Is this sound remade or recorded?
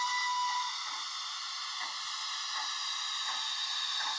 recorded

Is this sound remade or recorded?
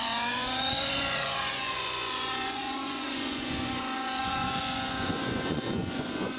remade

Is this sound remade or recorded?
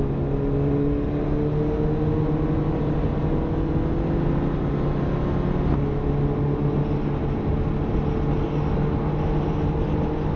recorded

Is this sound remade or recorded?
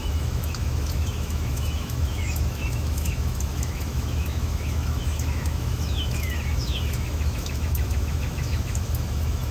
remade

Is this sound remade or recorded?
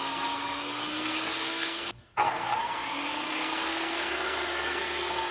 remade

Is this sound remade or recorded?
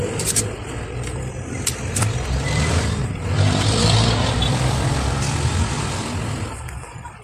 remade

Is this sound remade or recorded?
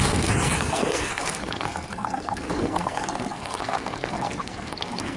remade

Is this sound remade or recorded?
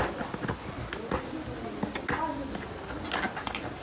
recorded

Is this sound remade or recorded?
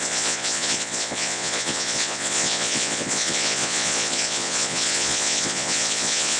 remade